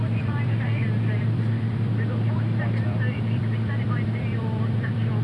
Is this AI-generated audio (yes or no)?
yes